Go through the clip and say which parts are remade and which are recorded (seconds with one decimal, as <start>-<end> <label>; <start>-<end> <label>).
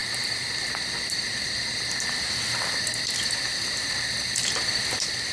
0.0-5.3 recorded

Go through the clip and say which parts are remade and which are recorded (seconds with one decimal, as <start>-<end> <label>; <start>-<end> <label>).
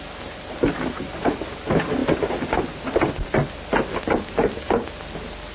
0.0-5.5 recorded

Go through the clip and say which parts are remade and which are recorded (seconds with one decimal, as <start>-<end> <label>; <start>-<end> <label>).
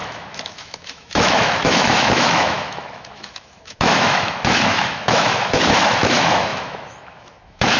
0.0-7.8 remade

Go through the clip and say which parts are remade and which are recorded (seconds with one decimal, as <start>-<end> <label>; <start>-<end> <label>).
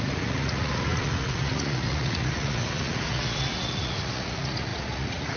0.0-5.4 remade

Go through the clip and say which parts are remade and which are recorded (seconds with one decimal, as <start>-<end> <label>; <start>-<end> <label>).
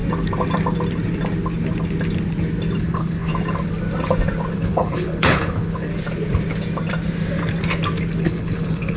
0.0-2.8 recorded; 2.8-3.3 remade; 3.3-4.5 recorded; 4.5-5.9 remade; 5.9-8.2 recorded; 8.2-9.0 remade